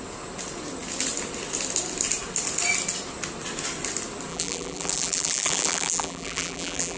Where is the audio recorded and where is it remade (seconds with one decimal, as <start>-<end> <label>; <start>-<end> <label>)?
0.0-4.3 recorded; 4.3-7.0 remade